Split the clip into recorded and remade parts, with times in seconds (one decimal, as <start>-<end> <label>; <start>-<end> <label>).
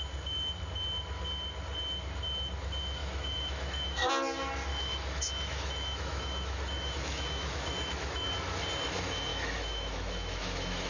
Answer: 0.0-3.0 recorded; 3.0-4.1 remade; 4.1-4.7 recorded; 4.7-8.3 remade; 8.3-9.3 recorded; 9.3-10.9 remade